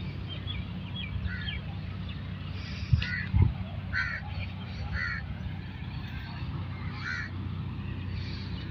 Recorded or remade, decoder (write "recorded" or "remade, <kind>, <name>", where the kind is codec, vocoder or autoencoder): recorded